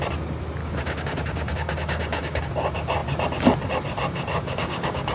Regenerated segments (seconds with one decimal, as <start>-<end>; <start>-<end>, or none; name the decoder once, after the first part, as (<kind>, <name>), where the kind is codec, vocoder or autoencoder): 0.6-2.5 (codec, DAC); 4.3-5.1